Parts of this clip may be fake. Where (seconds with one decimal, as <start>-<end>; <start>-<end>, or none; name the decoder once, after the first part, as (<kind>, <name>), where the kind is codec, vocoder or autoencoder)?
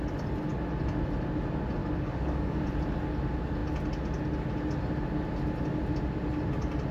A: 1.8-2.6 (codec, DAC)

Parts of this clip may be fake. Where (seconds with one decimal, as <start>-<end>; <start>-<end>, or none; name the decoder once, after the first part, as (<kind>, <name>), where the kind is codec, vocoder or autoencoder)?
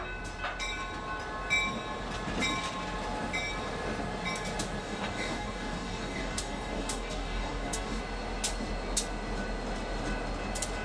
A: 4.8-8.0 (codec, DAC)